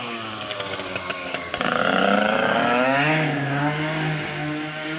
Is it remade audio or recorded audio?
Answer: remade